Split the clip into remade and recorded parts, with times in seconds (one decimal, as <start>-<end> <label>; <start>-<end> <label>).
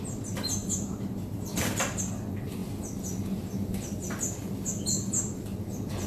0.0-0.6 recorded; 0.6-2.0 remade; 2.0-6.1 recorded